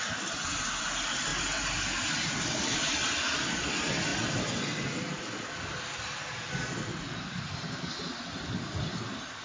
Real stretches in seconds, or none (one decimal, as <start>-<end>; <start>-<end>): 0.0-9.4